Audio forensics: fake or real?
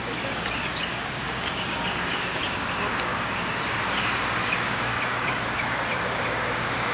fake